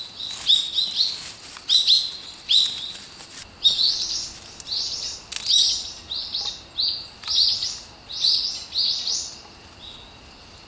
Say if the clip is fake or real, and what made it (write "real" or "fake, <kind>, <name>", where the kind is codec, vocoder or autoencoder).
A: real